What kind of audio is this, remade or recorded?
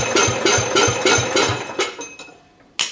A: recorded